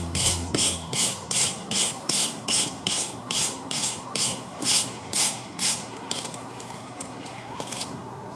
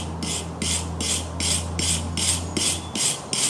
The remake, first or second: first